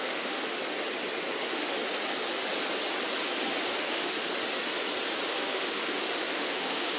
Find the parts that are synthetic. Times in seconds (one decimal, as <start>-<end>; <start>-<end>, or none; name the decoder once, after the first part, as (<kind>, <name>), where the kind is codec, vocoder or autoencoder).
0.0-0.6 (autoencoder, DAC-VAE); 1.4-1.8; 3.8-4.4; 5.3-7.0